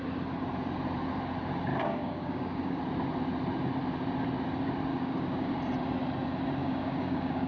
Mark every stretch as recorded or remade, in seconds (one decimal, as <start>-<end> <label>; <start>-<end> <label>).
0.0-1.7 recorded; 1.7-2.8 remade; 2.8-4.9 recorded; 4.9-5.5 remade; 5.5-6.6 recorded; 6.6-7.5 remade

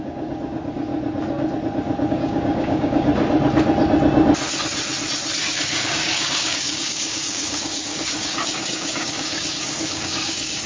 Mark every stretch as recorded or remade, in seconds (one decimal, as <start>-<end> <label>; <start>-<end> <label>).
0.0-0.9 remade; 0.9-2.1 recorded; 2.1-3.1 remade; 3.1-5.4 recorded; 5.4-10.7 remade

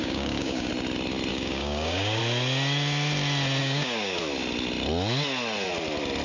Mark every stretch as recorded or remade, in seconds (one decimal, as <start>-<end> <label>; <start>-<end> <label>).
0.0-0.7 remade; 0.7-1.3 recorded; 1.3-2.2 remade; 2.2-3.6 recorded; 3.6-4.2 remade; 4.2-6.2 recorded

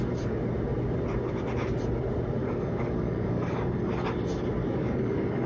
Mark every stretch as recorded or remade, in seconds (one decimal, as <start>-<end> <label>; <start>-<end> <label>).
0.0-2.4 recorded; 2.4-3.9 remade; 3.9-4.6 recorded; 4.6-5.5 remade